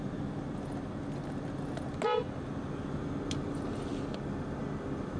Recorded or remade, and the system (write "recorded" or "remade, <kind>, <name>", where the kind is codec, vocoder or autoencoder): recorded